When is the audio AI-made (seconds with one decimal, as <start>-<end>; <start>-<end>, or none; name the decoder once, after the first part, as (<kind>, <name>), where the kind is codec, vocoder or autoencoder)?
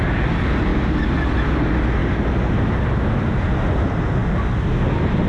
none